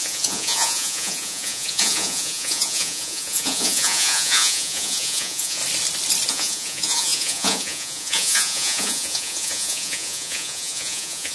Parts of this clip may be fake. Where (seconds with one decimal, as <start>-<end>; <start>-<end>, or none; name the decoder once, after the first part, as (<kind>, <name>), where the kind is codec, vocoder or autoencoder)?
0.0-5.6 (vocoder, Vocos); 6.3-11.3